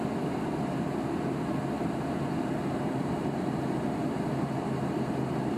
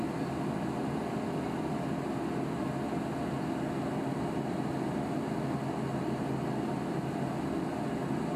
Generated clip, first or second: first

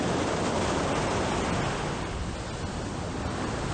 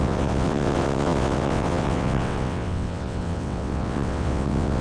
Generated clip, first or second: second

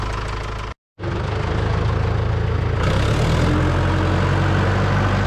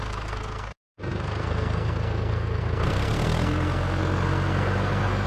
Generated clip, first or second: second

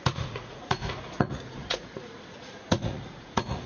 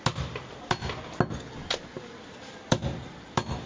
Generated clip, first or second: first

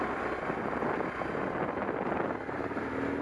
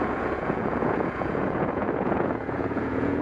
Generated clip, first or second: second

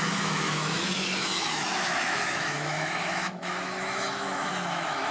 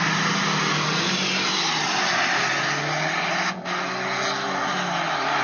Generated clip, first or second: first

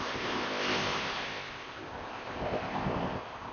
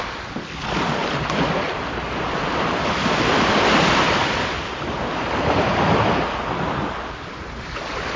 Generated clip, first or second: first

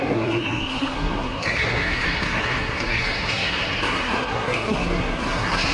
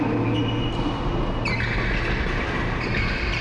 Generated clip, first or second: first